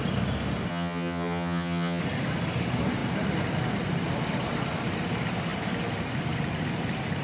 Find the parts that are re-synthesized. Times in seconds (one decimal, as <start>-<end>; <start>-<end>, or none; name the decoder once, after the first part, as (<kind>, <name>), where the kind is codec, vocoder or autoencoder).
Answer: 0.7-2.0 (vocoder, HiFi-GAN)